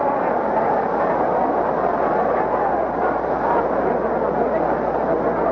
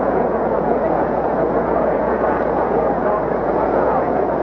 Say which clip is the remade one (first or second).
second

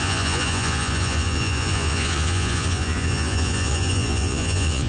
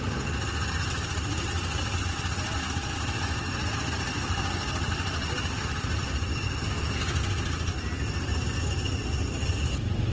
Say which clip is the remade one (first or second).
first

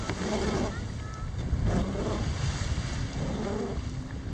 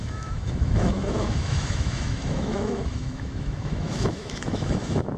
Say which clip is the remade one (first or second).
second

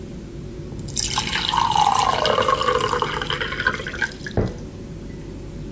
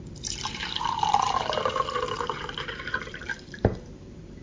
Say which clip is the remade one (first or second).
second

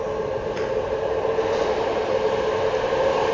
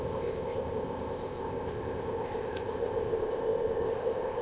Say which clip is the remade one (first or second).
second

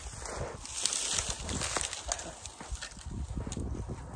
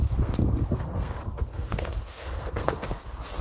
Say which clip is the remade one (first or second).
second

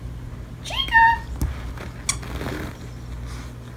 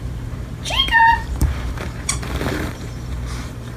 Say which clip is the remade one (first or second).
second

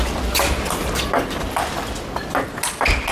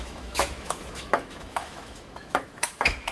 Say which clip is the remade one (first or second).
second